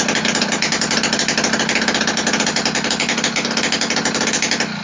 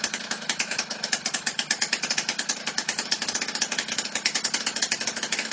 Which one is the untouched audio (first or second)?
first